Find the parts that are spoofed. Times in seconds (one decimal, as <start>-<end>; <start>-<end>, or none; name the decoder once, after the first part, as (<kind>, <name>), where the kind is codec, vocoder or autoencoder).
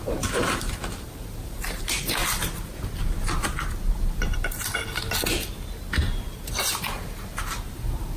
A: 0.0-2.2 (vocoder, BigVGAN v2); 6.5-8.2